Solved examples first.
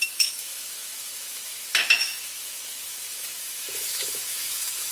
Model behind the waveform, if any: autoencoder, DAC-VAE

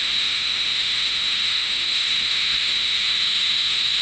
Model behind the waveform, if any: autoencoder, DAC-VAE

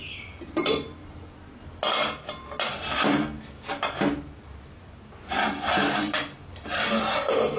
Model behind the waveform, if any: none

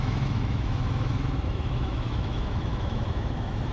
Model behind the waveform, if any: autoencoder, DAC-VAE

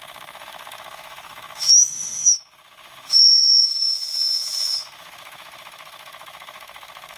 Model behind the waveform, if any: autoencoder, DAC-VAE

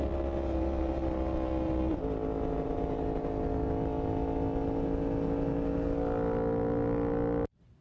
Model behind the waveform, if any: none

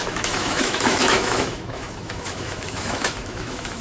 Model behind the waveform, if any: autoencoder, DAC-VAE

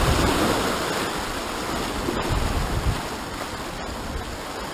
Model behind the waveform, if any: none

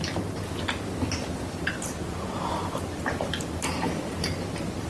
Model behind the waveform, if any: none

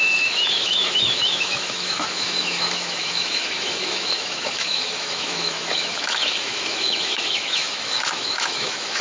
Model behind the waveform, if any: autoencoder, DAC-VAE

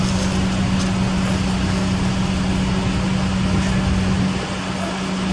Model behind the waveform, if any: none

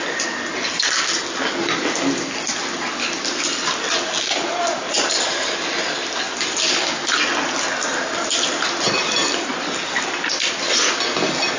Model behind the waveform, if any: none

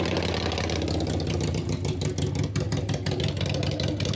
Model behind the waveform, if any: none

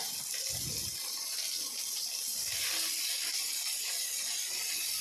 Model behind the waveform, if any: none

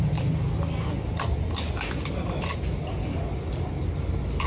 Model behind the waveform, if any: none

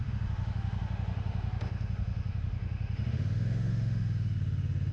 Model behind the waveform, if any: autoencoder, DAC-VAE